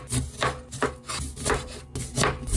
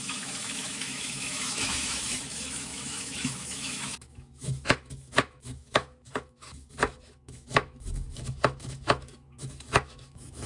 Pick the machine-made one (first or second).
second